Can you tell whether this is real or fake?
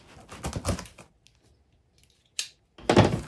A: real